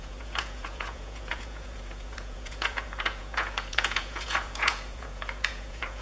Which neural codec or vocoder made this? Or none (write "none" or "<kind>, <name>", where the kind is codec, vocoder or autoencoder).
vocoder, Vocos